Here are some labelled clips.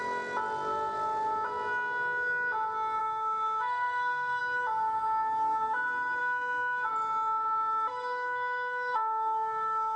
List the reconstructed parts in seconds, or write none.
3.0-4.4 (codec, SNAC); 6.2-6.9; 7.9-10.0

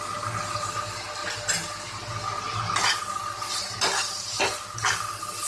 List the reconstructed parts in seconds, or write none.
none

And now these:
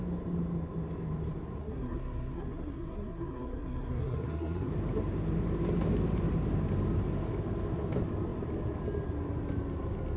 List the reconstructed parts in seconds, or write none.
1.6-4.7 (codec, SNAC)